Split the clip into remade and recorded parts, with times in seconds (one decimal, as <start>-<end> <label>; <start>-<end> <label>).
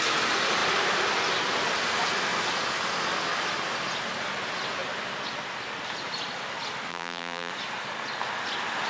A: 0.0-6.9 recorded; 6.9-7.5 remade; 7.5-8.9 recorded